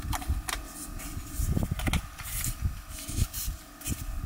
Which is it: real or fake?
real